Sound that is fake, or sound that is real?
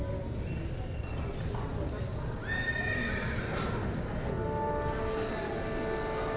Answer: real